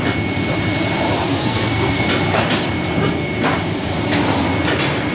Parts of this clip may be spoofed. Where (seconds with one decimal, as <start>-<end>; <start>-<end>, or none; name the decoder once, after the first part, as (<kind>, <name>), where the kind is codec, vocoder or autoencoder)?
1.3-2.0 (codec, SNAC)